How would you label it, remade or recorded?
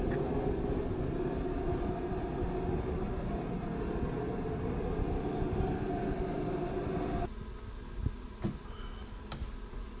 recorded